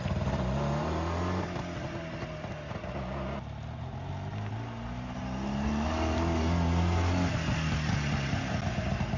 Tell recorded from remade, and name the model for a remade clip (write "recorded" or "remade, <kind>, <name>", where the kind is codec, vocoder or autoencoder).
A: recorded